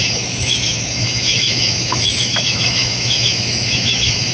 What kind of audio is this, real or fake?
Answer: fake